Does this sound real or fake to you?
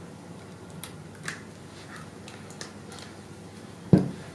real